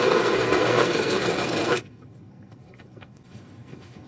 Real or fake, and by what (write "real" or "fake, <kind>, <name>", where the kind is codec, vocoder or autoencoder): fake, codec, SNAC